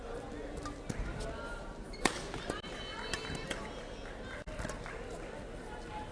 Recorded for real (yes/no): yes